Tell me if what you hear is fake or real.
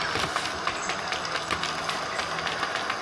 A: fake